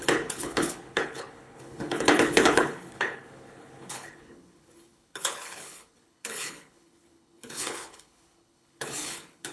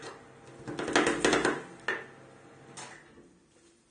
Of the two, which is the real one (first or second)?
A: second